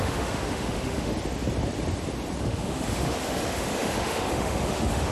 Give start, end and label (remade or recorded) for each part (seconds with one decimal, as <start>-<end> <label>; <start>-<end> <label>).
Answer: 0.0-1.1 remade; 1.1-2.4 recorded; 2.4-5.1 remade